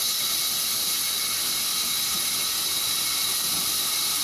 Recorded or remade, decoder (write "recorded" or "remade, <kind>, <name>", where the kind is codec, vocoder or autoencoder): recorded